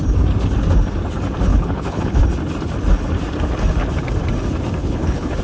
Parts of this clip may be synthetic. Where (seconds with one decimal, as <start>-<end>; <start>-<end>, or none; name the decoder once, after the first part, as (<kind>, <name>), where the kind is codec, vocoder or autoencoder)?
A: 1.5-2.2 (codec, HILCodec); 4.8-5.4